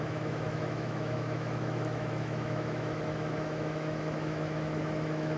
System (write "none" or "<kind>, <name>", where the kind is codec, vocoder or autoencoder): autoencoder, DAC-VAE